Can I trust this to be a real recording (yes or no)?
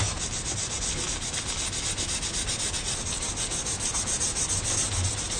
yes